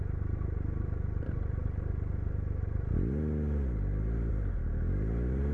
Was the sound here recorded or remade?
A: recorded